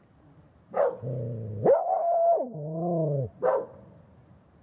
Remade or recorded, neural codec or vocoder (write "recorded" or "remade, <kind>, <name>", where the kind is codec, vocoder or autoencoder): remade, vocoder, BigVGAN v2